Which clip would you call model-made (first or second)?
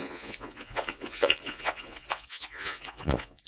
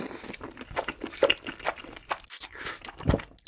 first